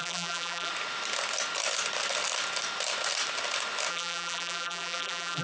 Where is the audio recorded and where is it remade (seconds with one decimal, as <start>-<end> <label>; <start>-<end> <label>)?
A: 0.0-0.7 remade; 0.7-3.9 recorded; 3.9-5.4 remade